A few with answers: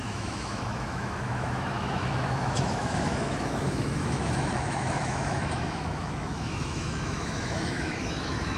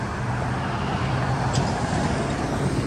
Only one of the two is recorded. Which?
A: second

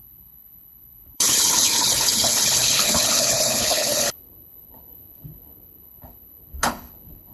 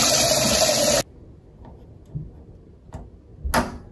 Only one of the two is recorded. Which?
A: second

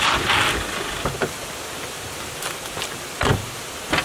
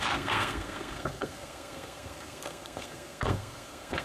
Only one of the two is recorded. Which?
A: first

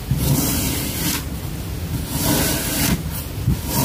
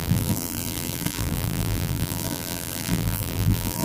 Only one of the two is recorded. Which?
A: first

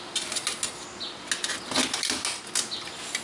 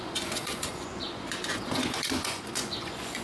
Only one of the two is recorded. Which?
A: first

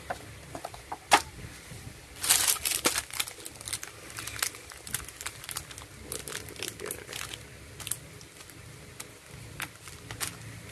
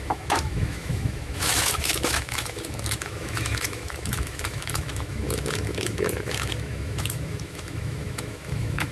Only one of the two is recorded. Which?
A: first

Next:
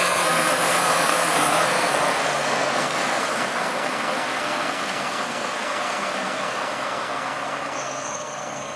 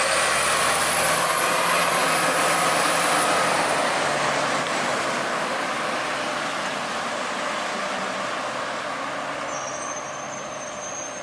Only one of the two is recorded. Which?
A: second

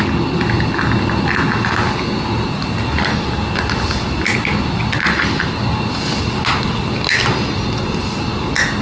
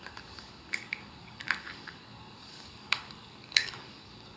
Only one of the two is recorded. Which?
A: first